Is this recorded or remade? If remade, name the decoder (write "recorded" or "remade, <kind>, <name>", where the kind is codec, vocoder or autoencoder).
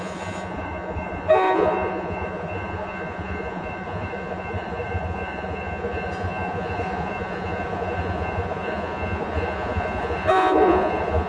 remade, vocoder, Vocos